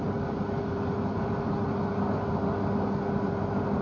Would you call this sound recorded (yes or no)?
yes